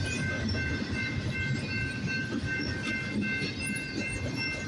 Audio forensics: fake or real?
real